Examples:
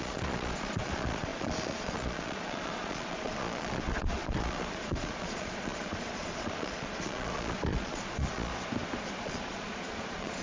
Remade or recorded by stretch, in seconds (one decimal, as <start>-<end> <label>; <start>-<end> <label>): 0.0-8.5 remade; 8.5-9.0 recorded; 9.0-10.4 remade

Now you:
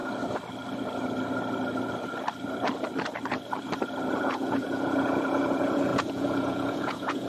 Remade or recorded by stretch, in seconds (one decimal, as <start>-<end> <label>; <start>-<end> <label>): 0.0-4.2 recorded; 4.2-7.3 remade

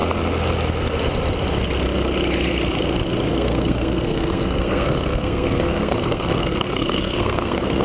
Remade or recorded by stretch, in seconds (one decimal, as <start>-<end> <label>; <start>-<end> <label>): 0.0-3.3 recorded; 3.3-7.8 remade

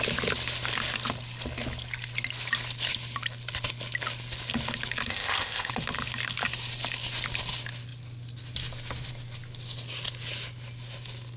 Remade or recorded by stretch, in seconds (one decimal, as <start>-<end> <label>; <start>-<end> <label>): 0.0-5.1 recorded; 5.1-5.7 remade; 5.7-11.4 recorded

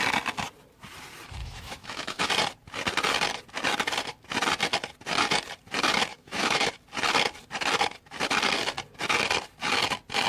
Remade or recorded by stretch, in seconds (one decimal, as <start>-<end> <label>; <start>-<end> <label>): 0.0-1.4 recorded; 1.4-2.3 remade; 2.3-6.1 recorded; 6.1-6.7 remade; 6.7-10.3 recorded

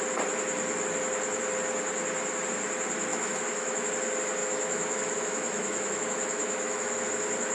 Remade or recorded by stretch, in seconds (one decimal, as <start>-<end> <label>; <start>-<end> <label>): 0.0-3.1 recorded; 3.1-3.9 remade; 3.9-4.4 recorded; 4.4-7.1 remade; 7.1-7.5 recorded